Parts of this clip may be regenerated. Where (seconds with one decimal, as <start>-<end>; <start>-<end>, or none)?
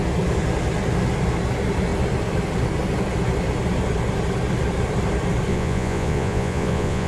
5.5-7.1